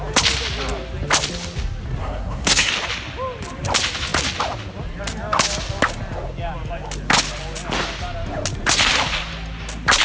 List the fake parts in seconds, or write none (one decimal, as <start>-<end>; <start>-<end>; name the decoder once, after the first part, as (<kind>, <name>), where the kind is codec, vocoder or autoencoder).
2.0-2.7 (codec, SNAC)